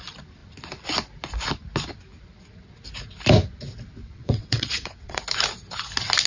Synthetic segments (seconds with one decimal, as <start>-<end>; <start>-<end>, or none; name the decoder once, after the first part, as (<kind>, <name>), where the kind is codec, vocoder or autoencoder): 4.0-5.2 (vocoder, WaveNeXt)